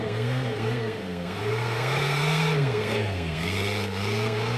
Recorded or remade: remade